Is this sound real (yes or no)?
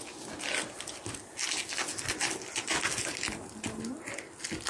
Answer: yes